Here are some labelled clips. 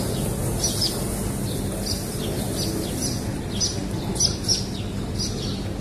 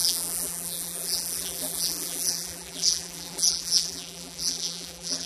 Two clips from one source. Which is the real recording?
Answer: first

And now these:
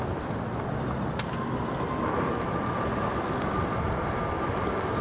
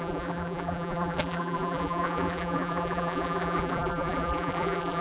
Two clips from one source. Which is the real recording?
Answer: first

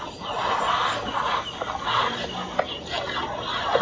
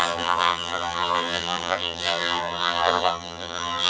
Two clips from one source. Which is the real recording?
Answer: first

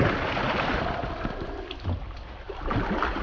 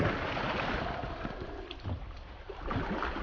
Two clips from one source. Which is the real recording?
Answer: first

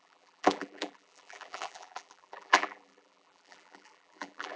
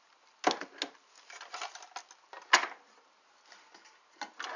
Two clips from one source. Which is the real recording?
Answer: second